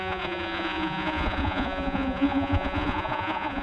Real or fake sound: fake